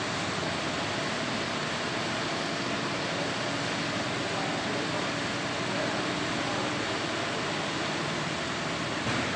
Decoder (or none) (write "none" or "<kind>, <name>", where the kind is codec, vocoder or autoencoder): none